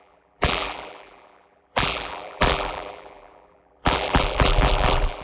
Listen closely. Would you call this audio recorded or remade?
remade